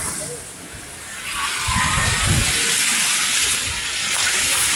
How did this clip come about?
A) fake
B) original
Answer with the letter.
B